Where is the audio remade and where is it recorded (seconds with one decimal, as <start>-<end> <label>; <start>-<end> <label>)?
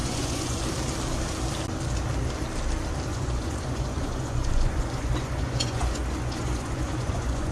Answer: 0.0-0.6 remade; 0.6-3.1 recorded; 3.1-7.5 remade